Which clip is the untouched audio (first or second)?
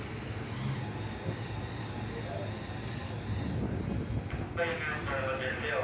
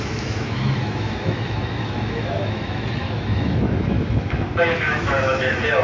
first